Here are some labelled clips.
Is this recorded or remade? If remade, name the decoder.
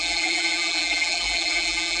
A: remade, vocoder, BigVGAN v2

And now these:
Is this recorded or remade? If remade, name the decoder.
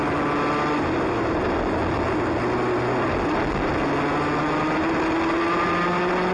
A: recorded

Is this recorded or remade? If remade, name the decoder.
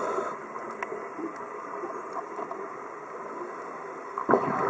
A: recorded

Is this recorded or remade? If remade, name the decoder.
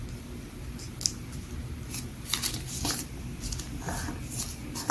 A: recorded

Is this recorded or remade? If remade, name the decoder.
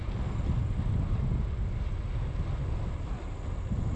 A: recorded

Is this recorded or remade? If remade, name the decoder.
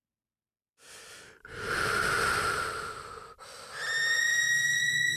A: recorded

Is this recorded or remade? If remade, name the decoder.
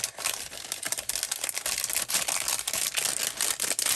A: recorded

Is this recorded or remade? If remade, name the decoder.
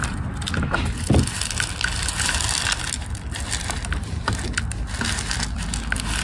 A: recorded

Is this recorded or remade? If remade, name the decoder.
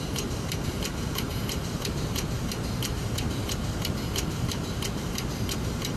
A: remade, vocoder, BigVGAN v2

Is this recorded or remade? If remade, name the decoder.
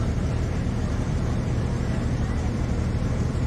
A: remade, vocoder, BigVGAN v2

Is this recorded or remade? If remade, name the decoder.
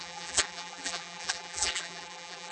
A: remade, vocoder, BigVGAN v2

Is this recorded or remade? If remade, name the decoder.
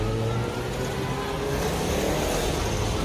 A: recorded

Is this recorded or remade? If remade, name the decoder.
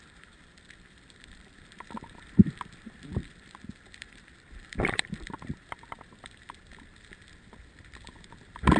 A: remade, vocoder, BigVGAN v2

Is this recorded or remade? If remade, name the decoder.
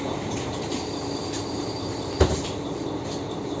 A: remade, vocoder, BigVGAN v2